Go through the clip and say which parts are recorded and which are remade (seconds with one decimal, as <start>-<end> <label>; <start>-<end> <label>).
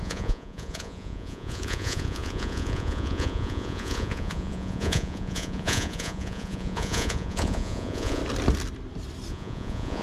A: 0.0-8.2 remade; 8.2-9.3 recorded; 9.3-10.0 remade